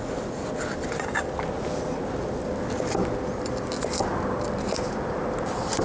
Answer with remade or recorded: recorded